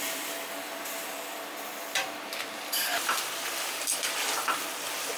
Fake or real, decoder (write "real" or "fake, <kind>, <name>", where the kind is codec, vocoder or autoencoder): fake, vocoder, BigVGAN v2